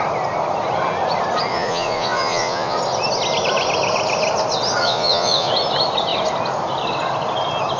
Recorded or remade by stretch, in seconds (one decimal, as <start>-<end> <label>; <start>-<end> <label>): 0.0-1.5 recorded; 1.5-2.8 remade; 2.8-4.8 recorded; 4.8-5.5 remade; 5.5-7.8 recorded